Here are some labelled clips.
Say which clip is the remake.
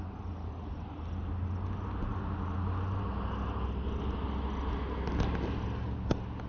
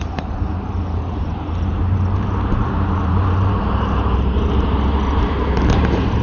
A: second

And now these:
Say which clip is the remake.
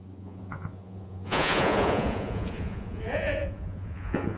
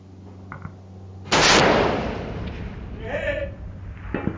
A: first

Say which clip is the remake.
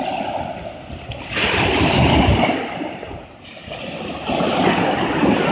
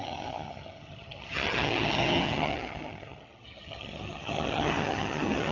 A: second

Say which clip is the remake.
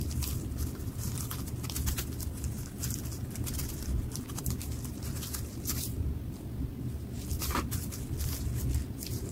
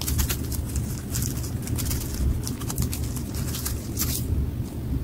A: first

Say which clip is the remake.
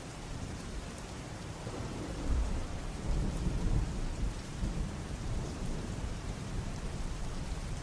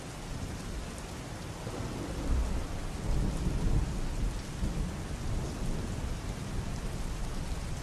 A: first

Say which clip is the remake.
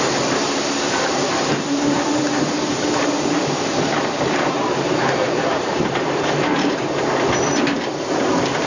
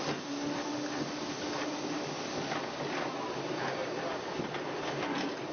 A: first